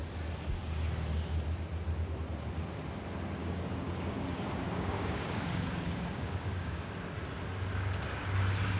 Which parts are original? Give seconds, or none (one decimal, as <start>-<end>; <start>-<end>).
0.0-3.4; 6.9-8.8